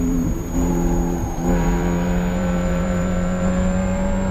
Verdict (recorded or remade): remade